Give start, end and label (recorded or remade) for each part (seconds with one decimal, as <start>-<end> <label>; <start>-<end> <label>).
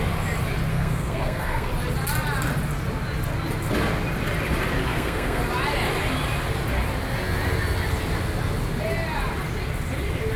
0.0-0.7 recorded; 0.7-1.7 remade; 1.7-4.9 recorded; 4.9-5.4 remade; 5.4-10.4 recorded